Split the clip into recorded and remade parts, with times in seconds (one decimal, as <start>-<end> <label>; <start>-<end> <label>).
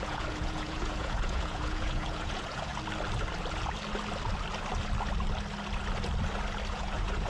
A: 0.0-2.7 remade; 2.7-6.7 recorded; 6.7-7.3 remade